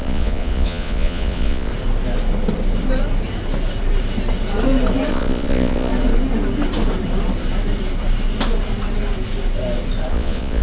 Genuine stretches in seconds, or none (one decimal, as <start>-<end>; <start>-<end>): 1.7-5.1; 5.9-10.1